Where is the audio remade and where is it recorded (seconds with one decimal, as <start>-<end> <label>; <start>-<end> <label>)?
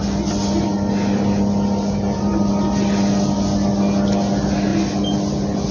0.0-5.7 recorded